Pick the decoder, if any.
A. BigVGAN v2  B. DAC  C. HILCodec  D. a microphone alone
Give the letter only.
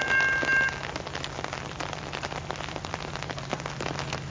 D